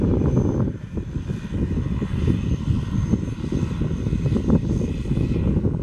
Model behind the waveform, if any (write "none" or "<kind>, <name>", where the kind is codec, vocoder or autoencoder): none